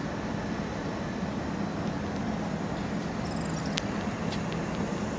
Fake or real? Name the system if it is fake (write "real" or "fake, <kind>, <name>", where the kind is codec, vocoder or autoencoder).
real